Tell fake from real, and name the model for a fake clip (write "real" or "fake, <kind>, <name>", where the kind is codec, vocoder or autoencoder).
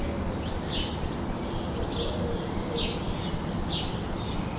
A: real